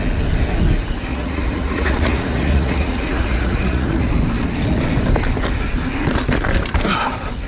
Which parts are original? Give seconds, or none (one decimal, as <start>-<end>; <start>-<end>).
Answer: 0.0-1.1; 4.1-7.5